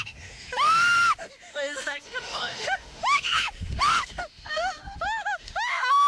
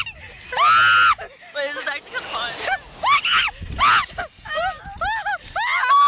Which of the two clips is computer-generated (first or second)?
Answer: first